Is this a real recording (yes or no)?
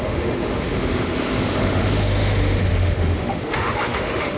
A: no